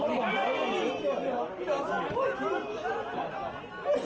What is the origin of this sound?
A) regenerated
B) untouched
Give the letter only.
B